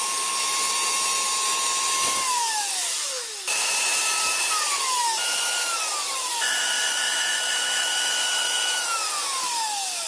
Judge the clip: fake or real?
fake